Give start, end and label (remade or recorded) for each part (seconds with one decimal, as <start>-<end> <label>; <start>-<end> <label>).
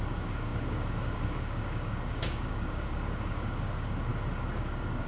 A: 0.0-4.1 remade; 4.1-4.6 recorded; 4.6-5.1 remade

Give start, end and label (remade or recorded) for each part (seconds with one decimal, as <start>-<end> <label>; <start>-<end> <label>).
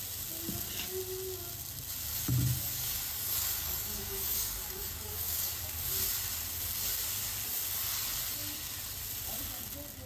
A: 0.0-2.1 recorded; 2.1-5.6 remade; 5.6-10.1 recorded